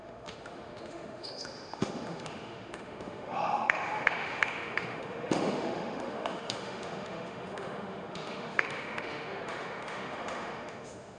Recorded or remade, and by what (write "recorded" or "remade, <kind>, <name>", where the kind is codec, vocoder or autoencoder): remade, autoencoder, DAC-VAE